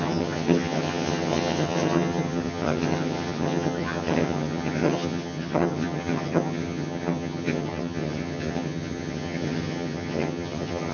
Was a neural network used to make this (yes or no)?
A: yes